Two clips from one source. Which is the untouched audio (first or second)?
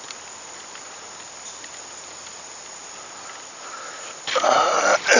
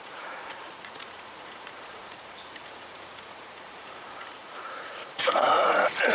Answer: first